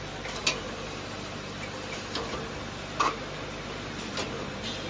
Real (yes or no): yes